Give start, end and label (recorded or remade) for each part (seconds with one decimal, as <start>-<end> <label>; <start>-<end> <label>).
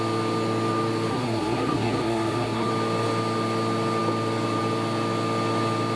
0.0-1.1 recorded; 1.1-2.7 remade; 2.7-6.0 recorded